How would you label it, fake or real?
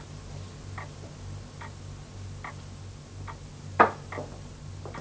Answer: real